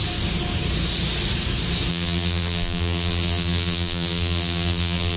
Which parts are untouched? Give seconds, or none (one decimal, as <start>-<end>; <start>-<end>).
0.0-1.9